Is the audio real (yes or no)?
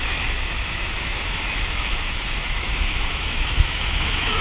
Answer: no